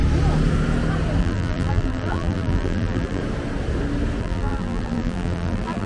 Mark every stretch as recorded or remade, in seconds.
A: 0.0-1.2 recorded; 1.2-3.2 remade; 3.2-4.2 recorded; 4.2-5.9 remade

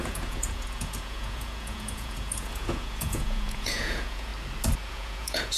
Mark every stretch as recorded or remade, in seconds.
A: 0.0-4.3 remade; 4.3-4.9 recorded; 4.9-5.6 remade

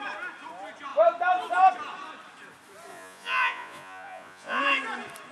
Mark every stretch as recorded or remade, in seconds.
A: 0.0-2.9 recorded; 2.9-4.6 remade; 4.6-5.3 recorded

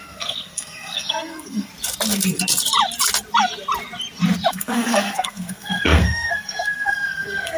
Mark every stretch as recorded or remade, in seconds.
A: 0.0-1.7 remade; 1.7-4.5 recorded; 4.5-7.6 remade

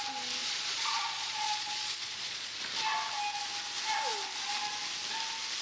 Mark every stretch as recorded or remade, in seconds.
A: 0.0-0.4 recorded; 0.4-2.6 remade; 2.6-5.6 recorded

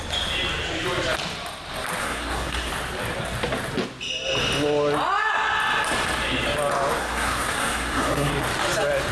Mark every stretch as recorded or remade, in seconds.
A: 0.0-2.0 recorded; 2.0-2.7 remade; 2.7-7.0 recorded; 7.0-8.3 remade; 8.3-9.1 recorded

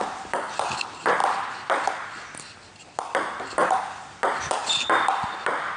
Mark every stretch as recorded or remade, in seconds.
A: 0.0-5.8 recorded

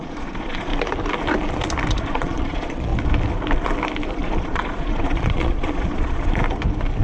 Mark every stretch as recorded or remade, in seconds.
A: 0.0-0.7 remade; 0.7-1.9 recorded; 1.9-2.9 remade; 2.9-4.1 recorded; 4.1-6.4 remade; 6.4-7.0 recorded